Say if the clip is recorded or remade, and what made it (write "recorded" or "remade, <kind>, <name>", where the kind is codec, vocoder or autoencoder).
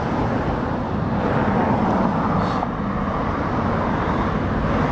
recorded